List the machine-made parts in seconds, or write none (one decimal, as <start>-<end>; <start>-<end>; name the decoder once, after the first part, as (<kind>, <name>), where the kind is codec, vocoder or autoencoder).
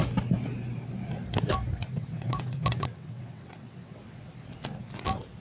1.9-4.0 (vocoder, WaveNeXt)